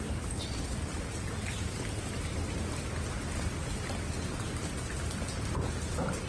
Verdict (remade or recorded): recorded